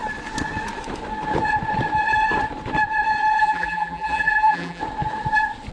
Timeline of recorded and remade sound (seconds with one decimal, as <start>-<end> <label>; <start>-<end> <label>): 0.0-3.4 recorded; 3.4-4.8 remade; 4.8-5.7 recorded